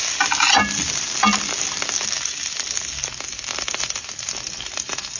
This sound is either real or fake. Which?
real